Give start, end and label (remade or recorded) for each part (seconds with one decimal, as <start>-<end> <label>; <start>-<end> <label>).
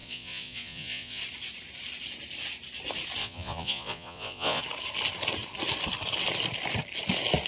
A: 0.0-1.2 remade; 1.2-3.2 recorded; 3.2-4.6 remade; 4.6-7.5 recorded